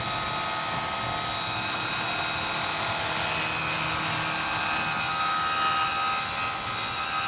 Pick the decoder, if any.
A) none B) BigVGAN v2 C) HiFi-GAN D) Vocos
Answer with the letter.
A